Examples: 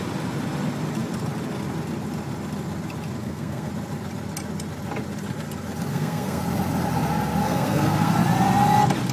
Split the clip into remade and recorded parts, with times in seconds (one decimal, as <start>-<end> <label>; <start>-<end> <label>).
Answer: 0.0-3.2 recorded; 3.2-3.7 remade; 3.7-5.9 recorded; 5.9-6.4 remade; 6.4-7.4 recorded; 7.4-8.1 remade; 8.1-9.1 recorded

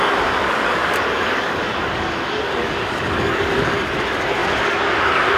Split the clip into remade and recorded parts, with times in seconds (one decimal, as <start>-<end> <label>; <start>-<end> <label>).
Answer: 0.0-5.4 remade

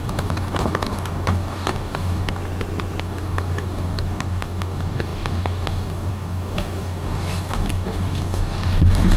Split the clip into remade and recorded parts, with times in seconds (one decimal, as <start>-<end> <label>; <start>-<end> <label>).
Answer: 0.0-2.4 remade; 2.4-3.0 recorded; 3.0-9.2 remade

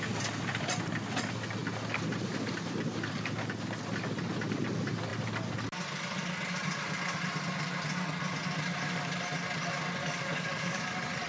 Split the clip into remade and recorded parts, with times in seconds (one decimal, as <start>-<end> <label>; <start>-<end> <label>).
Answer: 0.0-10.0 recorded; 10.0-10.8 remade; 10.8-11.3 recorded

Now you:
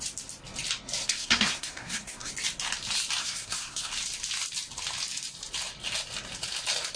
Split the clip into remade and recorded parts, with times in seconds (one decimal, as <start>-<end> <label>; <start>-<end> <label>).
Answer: 0.0-1.0 recorded; 1.0-2.3 remade; 2.3-3.2 recorded; 3.2-3.9 remade; 3.9-7.0 recorded